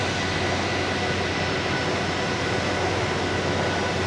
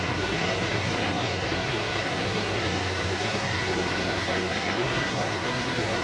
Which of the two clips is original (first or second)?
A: first